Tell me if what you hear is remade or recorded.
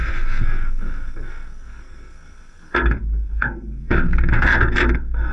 remade